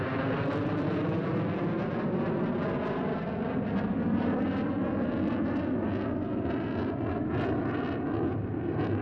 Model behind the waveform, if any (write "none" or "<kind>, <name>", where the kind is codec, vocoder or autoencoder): none